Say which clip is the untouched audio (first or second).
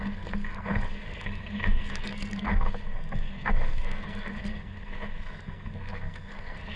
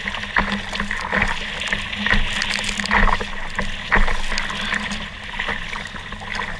second